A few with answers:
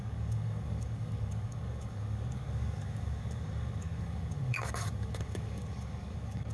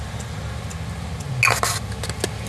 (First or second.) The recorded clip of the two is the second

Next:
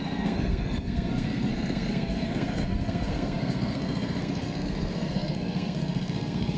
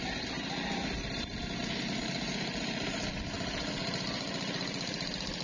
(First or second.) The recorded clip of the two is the second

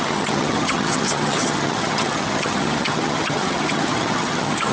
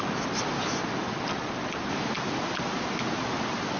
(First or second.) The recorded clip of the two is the second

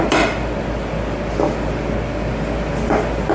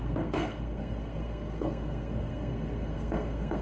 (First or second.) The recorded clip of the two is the first